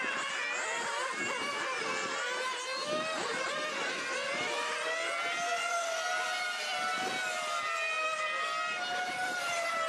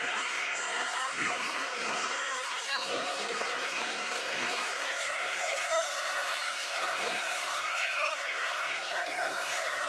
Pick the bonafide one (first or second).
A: first